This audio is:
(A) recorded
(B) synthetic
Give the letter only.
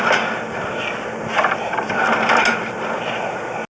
A